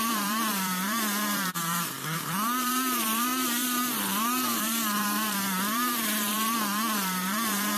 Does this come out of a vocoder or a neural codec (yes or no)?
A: yes